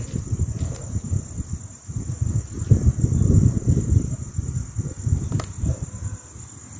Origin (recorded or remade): recorded